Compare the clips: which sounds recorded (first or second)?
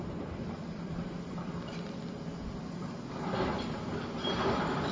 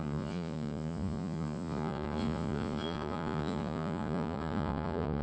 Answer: first